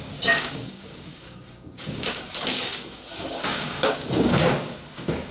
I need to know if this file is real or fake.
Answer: fake